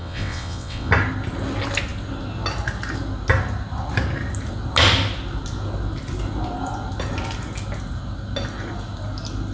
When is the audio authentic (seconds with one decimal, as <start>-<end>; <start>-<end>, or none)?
0.9-9.5